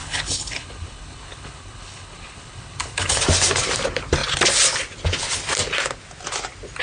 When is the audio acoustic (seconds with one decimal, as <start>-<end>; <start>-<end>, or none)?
3.2-6.8

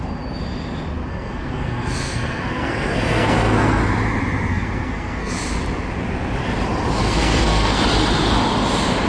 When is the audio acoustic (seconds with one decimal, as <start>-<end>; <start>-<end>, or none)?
0.0-1.1; 3.8-4.5; 5.3-7.0; 7.8-9.1